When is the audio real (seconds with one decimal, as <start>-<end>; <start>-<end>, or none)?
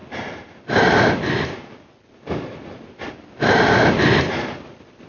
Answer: 0.0-5.1